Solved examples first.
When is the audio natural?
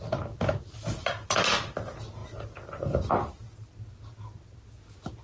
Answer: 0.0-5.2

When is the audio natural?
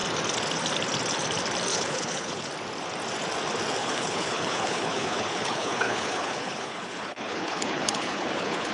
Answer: 0.0-1.7; 2.5-3.8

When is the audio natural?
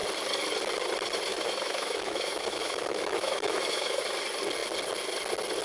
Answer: 0.0-1.3; 4.0-5.6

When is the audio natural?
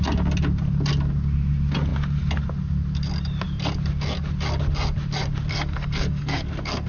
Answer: 0.0-5.5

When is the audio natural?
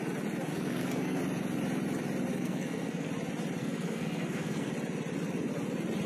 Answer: 0.0-0.5; 1.2-2.3; 3.1-3.6; 4.7-6.1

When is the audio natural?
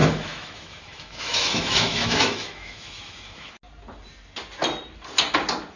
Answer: 3.5-5.8